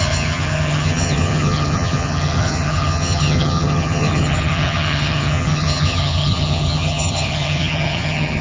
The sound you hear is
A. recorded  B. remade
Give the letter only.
B